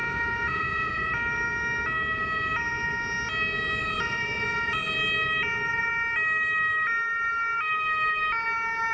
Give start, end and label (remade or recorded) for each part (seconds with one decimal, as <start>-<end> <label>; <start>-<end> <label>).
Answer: 0.0-1.1 remade; 1.1-3.8 recorded; 3.8-4.9 remade; 4.9-8.9 recorded